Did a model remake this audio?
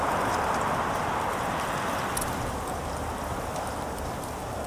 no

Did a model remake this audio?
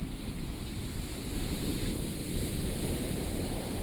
no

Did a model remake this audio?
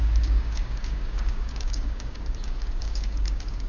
yes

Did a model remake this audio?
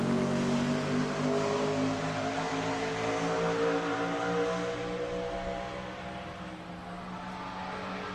no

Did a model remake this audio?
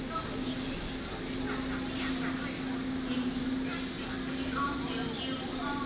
no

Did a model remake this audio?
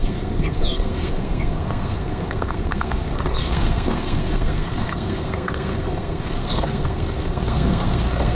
yes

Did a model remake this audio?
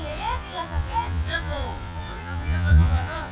yes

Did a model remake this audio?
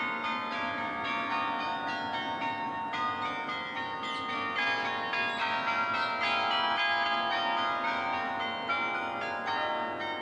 no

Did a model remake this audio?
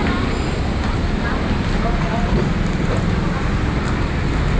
no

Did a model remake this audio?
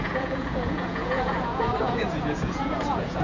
yes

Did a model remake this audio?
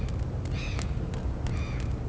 no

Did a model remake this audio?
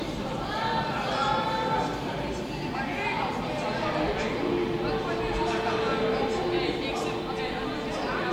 no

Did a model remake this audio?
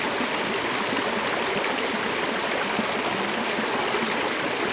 no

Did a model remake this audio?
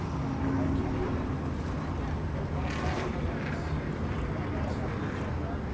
no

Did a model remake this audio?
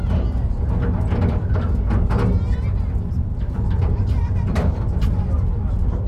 no